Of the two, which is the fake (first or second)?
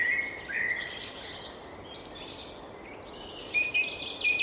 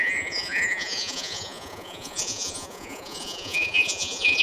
second